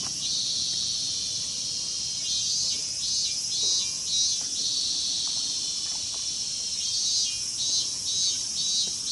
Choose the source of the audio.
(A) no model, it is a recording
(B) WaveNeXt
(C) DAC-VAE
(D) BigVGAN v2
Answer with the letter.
A